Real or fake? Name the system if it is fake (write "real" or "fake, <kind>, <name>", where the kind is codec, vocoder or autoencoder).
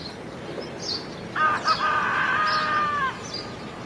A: real